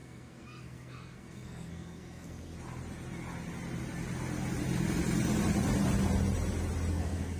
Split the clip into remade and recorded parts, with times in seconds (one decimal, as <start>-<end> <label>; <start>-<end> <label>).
0.0-2.5 remade; 2.5-6.9 recorded; 6.9-7.4 remade